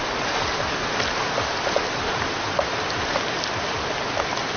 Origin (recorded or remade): recorded